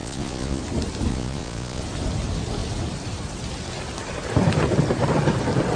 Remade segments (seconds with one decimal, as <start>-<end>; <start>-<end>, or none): 0.0-0.6; 1.1-1.8